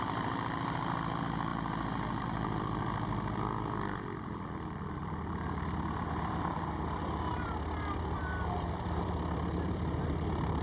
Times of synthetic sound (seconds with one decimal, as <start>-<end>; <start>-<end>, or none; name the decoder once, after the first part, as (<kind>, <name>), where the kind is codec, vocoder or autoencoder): 0.0-1.5 (vocoder, BigVGAN v2); 2.2-10.6